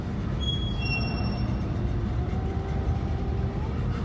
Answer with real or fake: real